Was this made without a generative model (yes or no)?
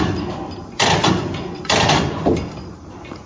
no